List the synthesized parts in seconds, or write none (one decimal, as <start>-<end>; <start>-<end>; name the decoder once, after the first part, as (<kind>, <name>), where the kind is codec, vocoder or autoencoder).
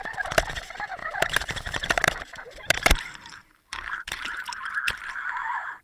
1.0-4.5 (vocoder, BigVGAN v2)